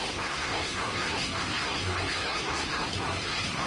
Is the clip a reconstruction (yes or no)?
yes